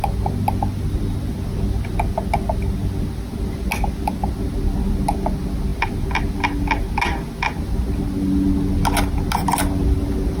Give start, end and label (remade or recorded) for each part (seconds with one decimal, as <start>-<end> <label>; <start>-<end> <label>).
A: 0.0-10.4 recorded